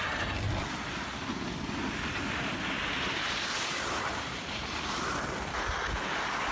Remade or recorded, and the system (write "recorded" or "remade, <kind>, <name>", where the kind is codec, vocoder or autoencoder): remade, vocoder, BigVGAN v2